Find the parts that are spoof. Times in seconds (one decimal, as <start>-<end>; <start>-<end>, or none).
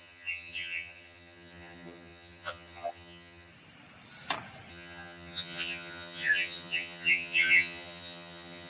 0.0-3.5; 4.7-8.7